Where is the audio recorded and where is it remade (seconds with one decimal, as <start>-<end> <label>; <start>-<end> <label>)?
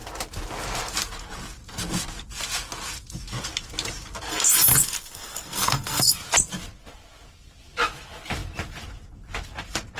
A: 0.0-4.3 recorded; 4.3-6.1 remade; 6.1-10.0 recorded